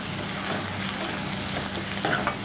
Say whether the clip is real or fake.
real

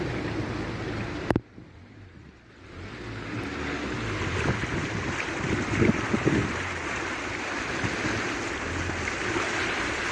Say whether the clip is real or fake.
real